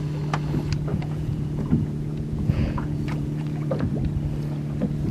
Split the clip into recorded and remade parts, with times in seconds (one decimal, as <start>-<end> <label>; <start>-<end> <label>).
0.0-0.9 recorded; 0.9-4.0 remade; 4.0-5.1 recorded